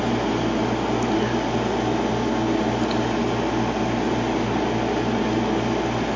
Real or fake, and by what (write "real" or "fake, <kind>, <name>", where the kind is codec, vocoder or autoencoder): real